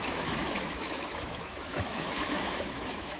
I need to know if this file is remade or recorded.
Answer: remade